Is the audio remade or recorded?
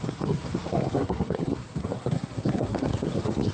remade